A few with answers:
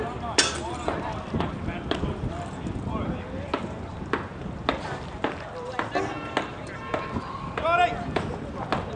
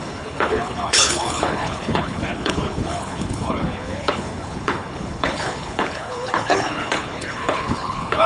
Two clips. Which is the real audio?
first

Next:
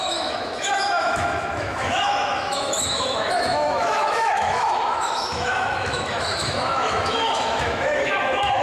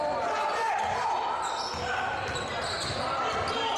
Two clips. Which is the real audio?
second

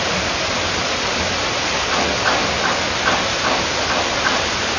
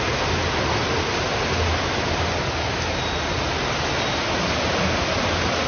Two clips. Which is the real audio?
second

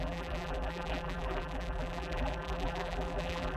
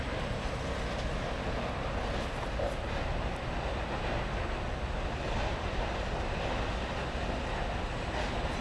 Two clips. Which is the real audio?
second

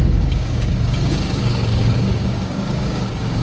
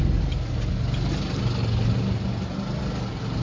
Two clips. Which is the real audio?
second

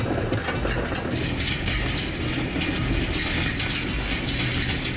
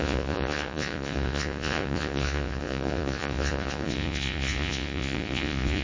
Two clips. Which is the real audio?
first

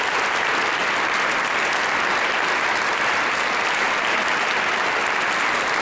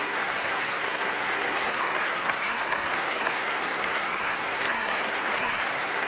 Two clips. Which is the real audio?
first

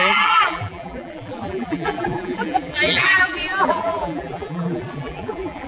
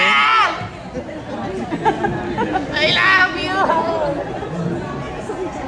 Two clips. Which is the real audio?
second